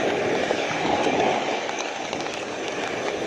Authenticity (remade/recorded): remade